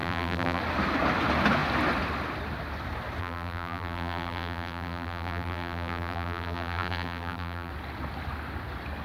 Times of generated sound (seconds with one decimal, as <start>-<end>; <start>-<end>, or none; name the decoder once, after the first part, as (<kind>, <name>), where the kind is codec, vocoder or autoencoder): 0.0-0.6 (vocoder, BigVGAN v2); 3.2-7.7

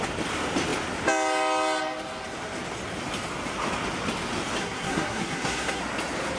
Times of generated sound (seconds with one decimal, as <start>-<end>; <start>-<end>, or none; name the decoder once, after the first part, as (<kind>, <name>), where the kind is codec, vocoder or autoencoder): 4.6-5.8 (codec, SNAC)

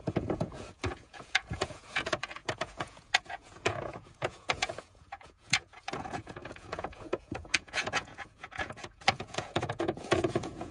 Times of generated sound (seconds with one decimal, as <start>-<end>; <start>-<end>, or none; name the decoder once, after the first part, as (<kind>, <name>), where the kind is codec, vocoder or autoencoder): 0.0-10.7 (vocoder, Vocos)

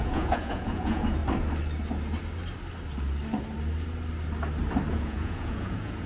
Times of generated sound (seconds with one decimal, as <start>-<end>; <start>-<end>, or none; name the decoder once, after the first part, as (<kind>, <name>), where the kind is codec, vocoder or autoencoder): 0.0-1.2 (vocoder, Vocos); 4.9-6.1

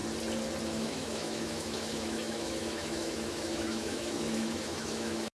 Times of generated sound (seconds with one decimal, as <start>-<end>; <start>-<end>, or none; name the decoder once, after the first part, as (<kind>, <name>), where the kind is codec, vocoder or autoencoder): 0.6-5.4 (autoencoder, DAC-VAE)